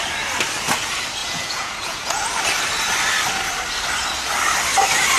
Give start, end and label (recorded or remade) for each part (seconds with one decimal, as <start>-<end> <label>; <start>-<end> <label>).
0.0-1.2 recorded; 1.2-2.2 remade; 2.2-5.2 recorded